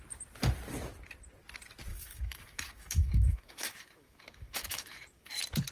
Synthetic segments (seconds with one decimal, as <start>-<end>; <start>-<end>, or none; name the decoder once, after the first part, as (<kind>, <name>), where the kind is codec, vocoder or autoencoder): 1.9-5.3 (autoencoder, DAC-VAE)